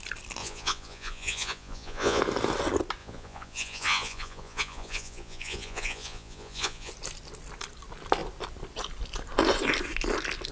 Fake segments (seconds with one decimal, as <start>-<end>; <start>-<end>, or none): 0.4-2.2; 3.0-6.9